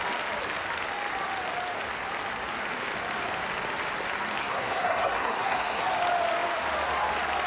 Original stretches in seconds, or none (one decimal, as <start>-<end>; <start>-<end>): 0.0-4.4; 5.8-7.5